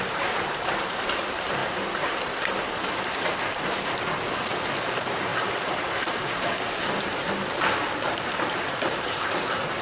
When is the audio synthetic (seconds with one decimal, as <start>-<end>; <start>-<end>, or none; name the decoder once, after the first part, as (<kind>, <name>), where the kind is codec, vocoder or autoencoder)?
0.0-1.6 (vocoder, BigVGAN v2); 4.6-5.3; 6.1-9.8